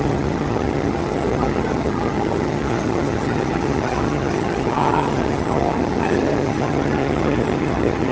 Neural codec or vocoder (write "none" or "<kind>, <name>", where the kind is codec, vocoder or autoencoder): vocoder, HiFi-GAN